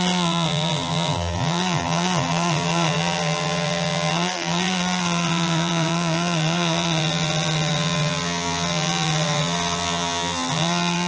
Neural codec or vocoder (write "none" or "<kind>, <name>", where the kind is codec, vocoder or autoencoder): vocoder, BigVGAN v2